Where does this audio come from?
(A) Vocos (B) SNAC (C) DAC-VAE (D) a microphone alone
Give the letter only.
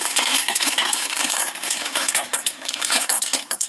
B